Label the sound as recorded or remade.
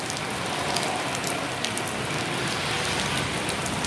recorded